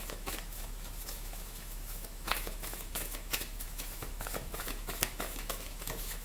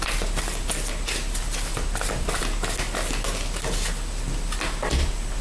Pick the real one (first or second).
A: second